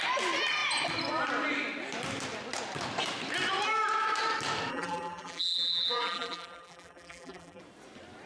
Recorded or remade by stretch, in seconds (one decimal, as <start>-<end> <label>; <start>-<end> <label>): 0.0-4.7 recorded; 4.7-7.6 remade; 7.6-8.3 recorded